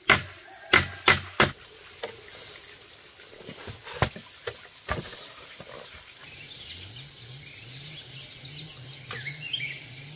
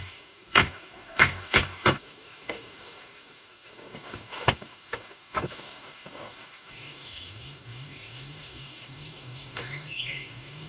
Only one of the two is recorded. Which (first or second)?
first